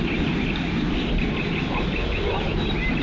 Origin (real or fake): real